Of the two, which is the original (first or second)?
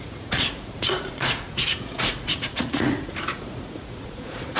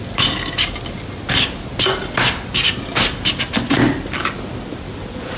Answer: second